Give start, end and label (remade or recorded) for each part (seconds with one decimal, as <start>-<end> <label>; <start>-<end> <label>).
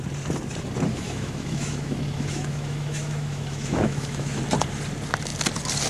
0.0-0.9 recorded; 0.9-4.4 remade; 4.4-5.9 recorded